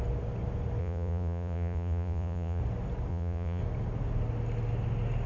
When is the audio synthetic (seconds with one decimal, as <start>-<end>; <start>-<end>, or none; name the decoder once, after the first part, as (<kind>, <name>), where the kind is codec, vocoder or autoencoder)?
0.8-2.6 (vocoder, Vocos); 3.1-3.6